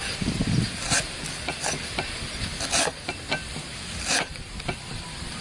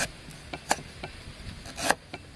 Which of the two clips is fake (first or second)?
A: first